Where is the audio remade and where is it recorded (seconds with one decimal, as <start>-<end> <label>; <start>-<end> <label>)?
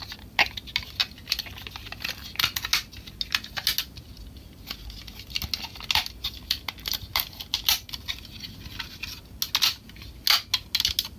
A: 0.0-11.2 recorded